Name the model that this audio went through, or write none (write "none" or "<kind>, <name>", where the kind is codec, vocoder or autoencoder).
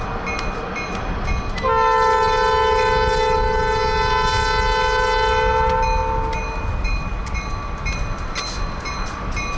none